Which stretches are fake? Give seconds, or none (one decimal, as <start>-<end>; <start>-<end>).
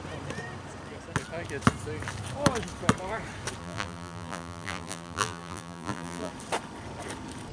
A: 3.6-6.3